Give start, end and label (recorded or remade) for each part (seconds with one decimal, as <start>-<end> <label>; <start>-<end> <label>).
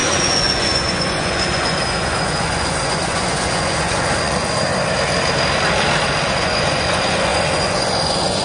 0.0-4.7 remade; 4.7-6.3 recorded; 6.3-8.4 remade